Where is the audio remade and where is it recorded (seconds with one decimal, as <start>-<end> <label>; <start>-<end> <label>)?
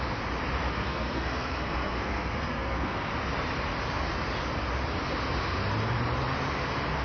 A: 0.0-0.7 recorded; 0.7-3.1 remade; 3.1-7.0 recorded